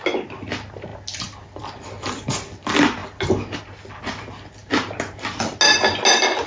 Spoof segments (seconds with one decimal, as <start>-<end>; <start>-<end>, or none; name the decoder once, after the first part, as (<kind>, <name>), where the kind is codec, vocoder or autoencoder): none